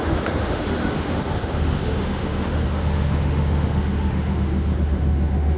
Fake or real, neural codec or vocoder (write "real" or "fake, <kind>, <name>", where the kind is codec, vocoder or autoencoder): fake, autoencoder, DAC-VAE